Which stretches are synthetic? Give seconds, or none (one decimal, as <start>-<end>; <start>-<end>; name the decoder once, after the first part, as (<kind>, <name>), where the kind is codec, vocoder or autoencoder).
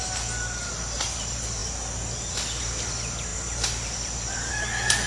none